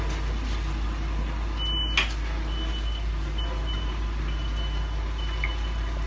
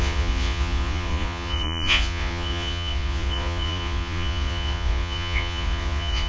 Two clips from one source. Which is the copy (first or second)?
second